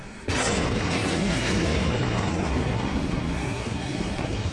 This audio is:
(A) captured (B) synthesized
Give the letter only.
B